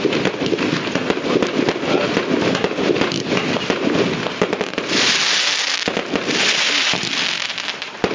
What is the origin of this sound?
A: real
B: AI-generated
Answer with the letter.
A